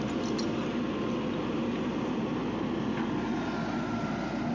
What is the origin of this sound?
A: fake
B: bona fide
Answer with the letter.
B